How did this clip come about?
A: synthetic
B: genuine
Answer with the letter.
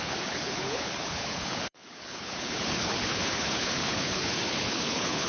A